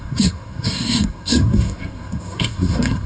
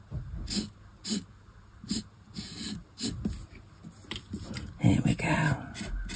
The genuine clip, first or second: second